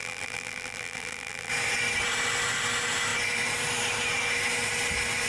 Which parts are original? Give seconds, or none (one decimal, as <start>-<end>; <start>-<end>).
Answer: 1.5-5.3

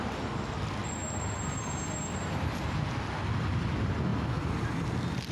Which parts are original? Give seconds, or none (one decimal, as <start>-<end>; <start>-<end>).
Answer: 0.0-5.3

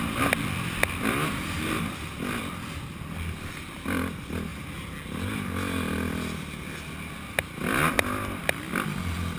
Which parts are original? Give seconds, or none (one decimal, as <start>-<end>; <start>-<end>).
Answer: 0.0-9.4

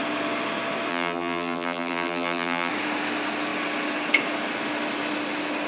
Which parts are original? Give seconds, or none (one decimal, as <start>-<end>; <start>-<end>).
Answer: 0.0-0.9; 2.7-5.7